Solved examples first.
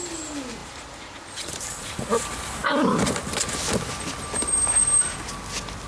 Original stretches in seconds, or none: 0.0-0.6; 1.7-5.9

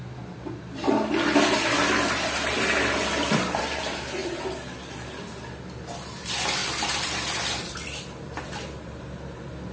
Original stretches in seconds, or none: 0.0-3.0; 3.8-6.6; 8.4-9.7

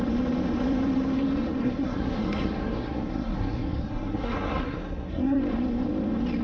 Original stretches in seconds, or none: 0.0-1.6; 5.4-6.4

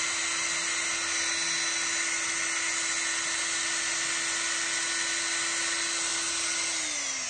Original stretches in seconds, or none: 0.0-7.3

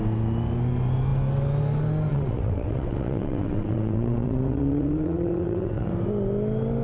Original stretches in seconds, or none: 0.0-2.1; 5.9-6.8

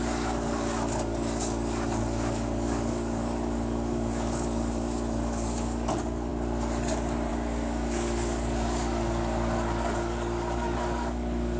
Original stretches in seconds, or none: 6.3-7.3

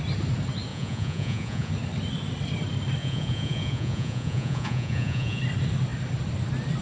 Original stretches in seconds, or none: 0.0-0.7; 1.7-3.0; 5.4-6.8

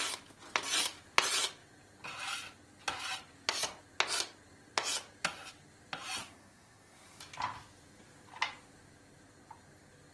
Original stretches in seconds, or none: 0.0-6.2; 7.2-10.1